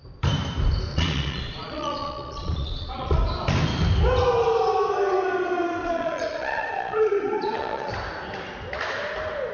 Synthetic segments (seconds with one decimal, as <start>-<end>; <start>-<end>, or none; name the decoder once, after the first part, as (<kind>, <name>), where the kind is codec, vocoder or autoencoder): 0.9-3.2 (vocoder, Vocos); 5.8-7.9